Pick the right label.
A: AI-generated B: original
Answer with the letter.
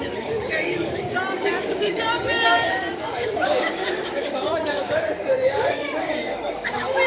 A